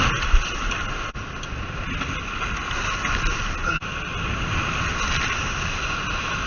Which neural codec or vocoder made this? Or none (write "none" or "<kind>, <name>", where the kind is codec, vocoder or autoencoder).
none